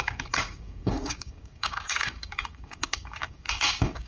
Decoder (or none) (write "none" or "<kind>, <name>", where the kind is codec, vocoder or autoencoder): codec, DAC